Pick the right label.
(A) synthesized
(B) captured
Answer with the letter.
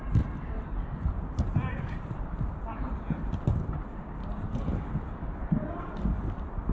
A